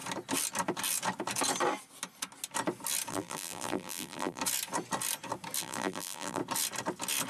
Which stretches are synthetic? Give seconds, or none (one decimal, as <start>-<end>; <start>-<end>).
3.1-4.4; 5.6-6.4